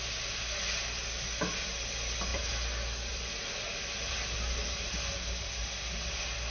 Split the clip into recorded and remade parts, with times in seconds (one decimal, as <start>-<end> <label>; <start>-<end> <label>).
0.0-2.3 recorded; 2.3-3.3 remade; 3.3-6.5 recorded